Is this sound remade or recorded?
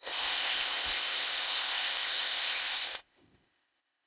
remade